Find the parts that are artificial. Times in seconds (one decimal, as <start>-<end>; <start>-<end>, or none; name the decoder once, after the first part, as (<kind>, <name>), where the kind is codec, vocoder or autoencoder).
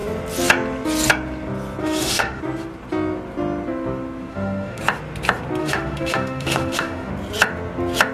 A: 1.8-2.4 (autoencoder, DAC-VAE); 4.3-4.8; 5.6-7.1